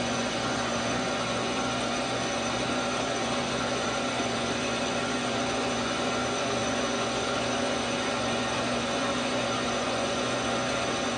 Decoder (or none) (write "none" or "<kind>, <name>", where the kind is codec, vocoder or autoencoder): vocoder, Vocos